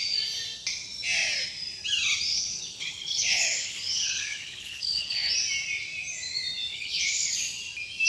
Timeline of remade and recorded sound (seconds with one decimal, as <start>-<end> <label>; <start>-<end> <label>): 0.0-2.3 recorded; 2.3-5.3 remade; 5.3-6.7 recorded; 6.7-7.3 remade; 7.3-8.1 recorded